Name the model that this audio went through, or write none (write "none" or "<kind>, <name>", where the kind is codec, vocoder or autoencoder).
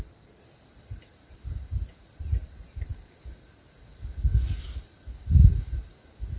none